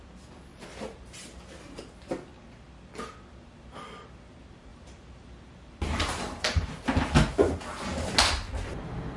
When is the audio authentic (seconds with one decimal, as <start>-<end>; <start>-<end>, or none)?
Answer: 0.0-0.5; 1.8-4.7; 6.7-9.2